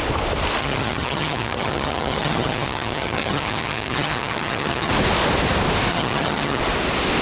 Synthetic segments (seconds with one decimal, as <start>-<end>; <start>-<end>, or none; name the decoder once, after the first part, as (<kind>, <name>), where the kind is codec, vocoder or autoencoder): 0.6-4.9 (vocoder, HiFi-GAN); 5.9-6.6